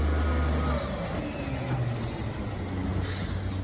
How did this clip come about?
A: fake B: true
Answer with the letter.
B